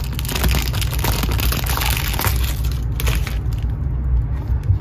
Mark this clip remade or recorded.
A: recorded